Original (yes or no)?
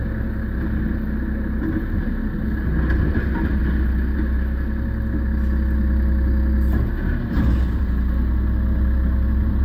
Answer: yes